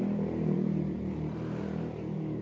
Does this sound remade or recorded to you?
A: remade